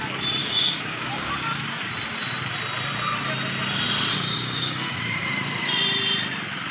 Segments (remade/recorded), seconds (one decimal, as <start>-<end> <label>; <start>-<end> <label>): 0.0-0.4 recorded; 0.4-1.3 remade; 1.3-4.1 recorded; 4.1-5.3 remade; 5.3-6.7 recorded